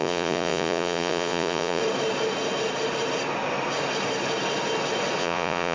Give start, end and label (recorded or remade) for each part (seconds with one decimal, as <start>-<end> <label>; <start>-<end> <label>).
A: 0.0-1.8 remade; 1.8-5.2 recorded; 5.2-5.7 remade